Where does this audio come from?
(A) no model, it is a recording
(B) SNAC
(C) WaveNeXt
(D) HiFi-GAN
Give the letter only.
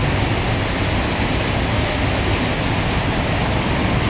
A